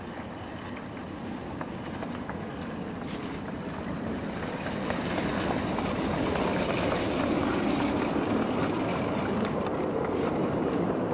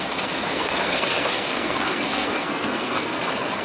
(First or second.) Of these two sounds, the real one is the first